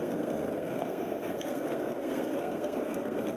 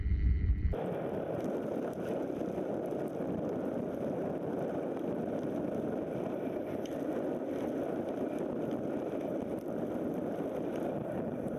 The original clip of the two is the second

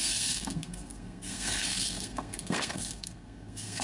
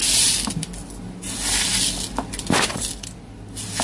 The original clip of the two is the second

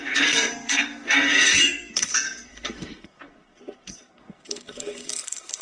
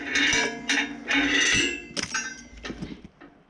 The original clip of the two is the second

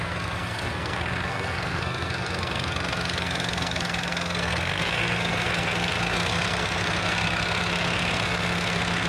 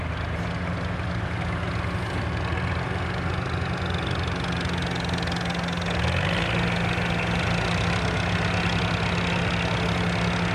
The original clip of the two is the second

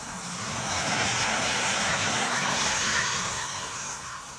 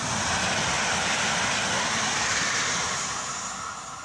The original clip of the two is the second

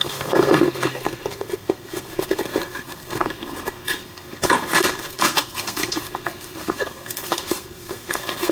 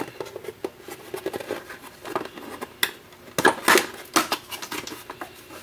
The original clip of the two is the second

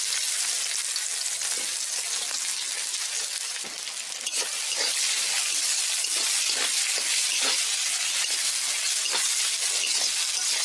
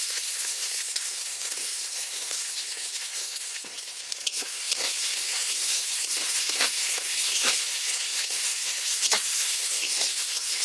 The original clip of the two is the first